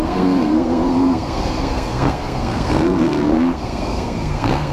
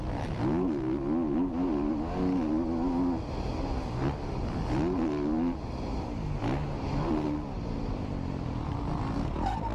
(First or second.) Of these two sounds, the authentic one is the second